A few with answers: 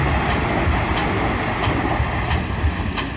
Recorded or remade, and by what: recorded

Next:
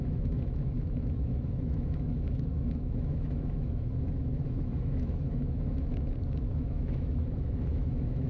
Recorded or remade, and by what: remade, autoencoder, DAC-VAE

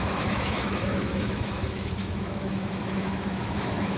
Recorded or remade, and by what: remade, autoencoder, DAC-VAE